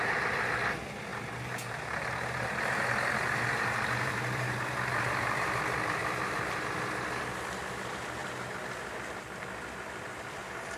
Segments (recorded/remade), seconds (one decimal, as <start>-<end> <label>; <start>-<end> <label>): 0.0-1.1 recorded; 1.1-5.6 remade; 5.6-6.0 recorded; 6.0-6.6 remade; 6.6-10.8 recorded